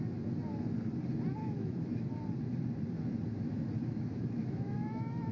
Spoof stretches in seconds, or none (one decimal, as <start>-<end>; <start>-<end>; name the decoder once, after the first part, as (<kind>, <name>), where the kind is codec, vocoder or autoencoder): 1.4-2.1 (autoencoder, DAC-VAE); 3.3-5.3